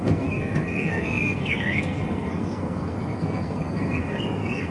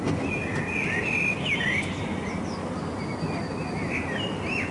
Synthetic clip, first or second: first